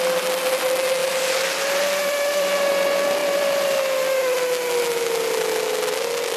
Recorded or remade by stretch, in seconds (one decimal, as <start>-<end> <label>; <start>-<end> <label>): 0.0-1.0 recorded; 1.0-2.7 remade; 2.7-3.2 recorded; 3.2-3.8 remade; 3.8-6.4 recorded